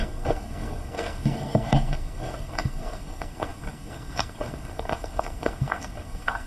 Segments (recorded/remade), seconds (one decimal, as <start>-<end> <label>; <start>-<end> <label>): 0.0-6.5 remade